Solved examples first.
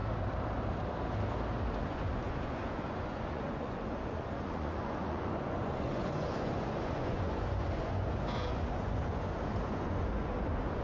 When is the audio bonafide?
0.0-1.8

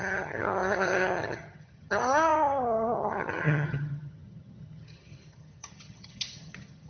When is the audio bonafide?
none

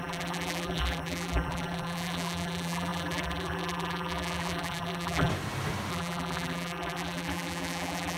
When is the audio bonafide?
5.3-5.9

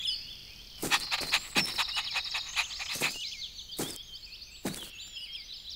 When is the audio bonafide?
0.0-5.8

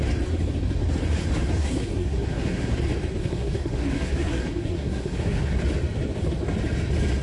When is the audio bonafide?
0.0-1.6; 2.8-3.2; 5.6-7.2

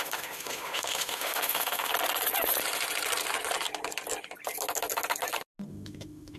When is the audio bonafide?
1.9-5.7